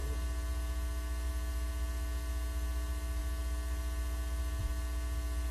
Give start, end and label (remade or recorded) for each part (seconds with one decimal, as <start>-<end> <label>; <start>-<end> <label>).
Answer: 0.0-5.5 recorded